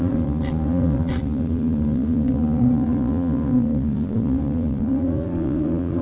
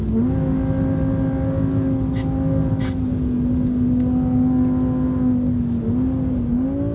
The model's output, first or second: first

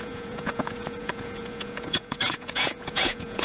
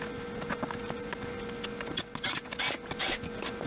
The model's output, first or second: first